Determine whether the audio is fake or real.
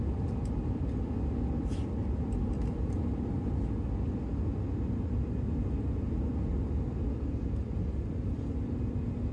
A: real